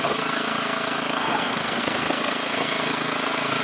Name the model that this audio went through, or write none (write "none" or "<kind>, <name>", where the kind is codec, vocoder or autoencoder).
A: codec, SNAC